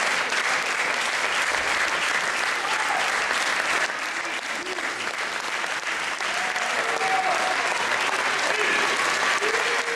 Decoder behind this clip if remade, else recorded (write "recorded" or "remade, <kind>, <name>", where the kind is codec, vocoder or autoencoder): recorded